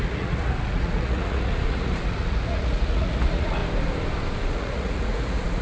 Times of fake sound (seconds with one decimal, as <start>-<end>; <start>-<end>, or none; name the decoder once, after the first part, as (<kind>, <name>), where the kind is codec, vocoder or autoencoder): 0.0-3.6 (vocoder, Vocos); 4.5-5.6